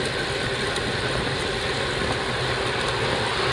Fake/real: real